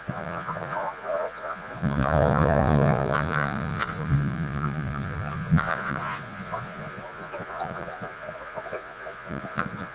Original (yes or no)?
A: no